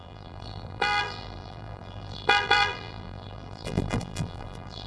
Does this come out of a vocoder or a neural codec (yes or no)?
yes